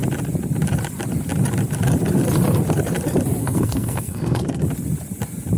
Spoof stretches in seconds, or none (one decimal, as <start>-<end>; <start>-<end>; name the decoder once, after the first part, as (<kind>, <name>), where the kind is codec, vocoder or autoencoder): 3.4-4.6 (codec, SNAC)